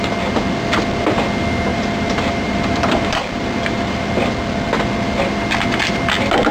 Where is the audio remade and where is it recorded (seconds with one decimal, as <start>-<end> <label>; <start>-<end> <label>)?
0.0-1.7 recorded; 1.7-4.1 remade; 4.1-6.5 recorded